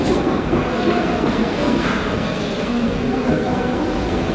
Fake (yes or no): yes